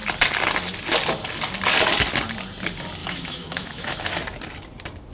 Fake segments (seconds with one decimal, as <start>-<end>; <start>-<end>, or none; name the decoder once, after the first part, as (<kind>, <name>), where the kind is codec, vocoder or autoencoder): 3.0-4.0 (autoencoder, DAC-VAE)